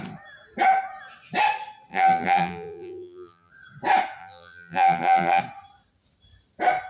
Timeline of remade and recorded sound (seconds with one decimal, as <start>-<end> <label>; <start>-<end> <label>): 0.0-1.9 recorded; 1.9-3.5 remade; 3.5-4.2 recorded; 4.2-5.4 remade; 5.4-6.9 recorded